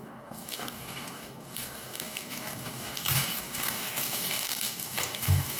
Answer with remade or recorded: remade